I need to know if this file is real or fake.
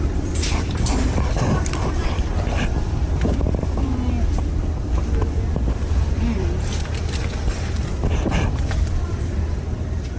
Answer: fake